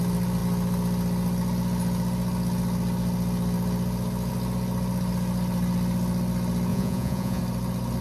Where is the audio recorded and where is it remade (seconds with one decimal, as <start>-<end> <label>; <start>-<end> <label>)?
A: 0.0-6.7 recorded; 6.7-7.4 remade; 7.4-8.0 recorded